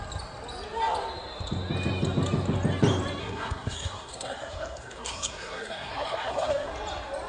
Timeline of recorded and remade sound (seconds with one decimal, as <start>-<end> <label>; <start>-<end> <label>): 0.0-3.2 recorded; 3.2-6.7 remade; 6.7-7.3 recorded